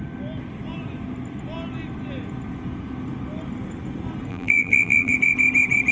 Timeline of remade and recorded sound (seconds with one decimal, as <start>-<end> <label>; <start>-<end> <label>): 0.0-4.3 recorded; 4.3-5.1 remade; 5.1-5.9 recorded